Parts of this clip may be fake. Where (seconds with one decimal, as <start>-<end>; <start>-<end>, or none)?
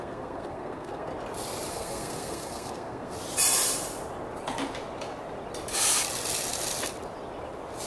0.0-1.1; 1.7-3.2